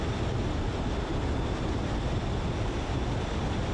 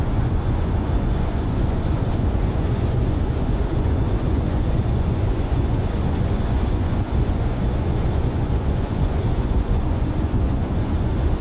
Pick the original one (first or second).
first